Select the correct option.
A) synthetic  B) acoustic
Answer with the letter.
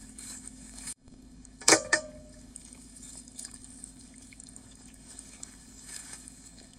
A